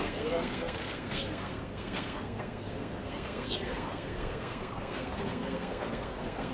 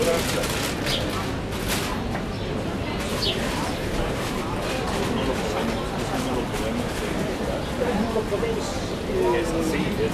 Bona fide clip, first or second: second